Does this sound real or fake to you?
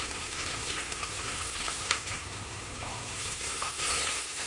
fake